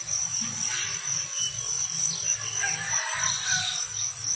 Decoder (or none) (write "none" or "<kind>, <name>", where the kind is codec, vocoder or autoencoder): none